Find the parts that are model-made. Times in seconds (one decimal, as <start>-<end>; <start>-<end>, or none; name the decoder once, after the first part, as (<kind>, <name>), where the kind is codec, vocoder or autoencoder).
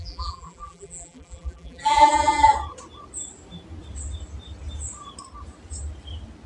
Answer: 0.0-2.5 (vocoder, BigVGAN v2)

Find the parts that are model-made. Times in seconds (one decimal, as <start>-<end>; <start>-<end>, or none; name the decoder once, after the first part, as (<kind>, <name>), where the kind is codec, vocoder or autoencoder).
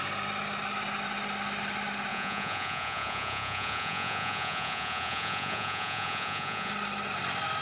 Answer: 2.1-6.7 (vocoder, Vocos)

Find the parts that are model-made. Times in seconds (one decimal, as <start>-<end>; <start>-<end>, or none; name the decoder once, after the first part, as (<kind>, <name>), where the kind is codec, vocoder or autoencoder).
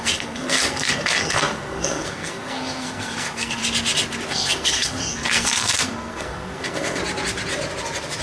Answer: 0.0-3.6 (codec, SNAC); 4.3-7.0